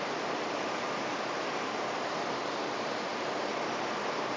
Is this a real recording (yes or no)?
no